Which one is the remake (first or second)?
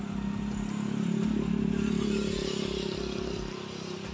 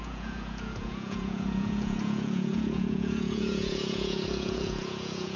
second